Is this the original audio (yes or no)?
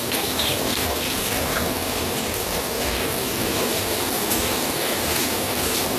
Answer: no